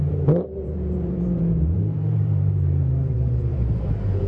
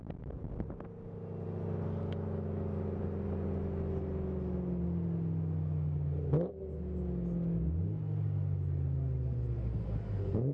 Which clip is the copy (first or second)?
first